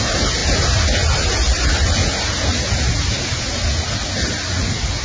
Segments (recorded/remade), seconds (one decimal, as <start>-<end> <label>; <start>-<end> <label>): 0.0-5.0 recorded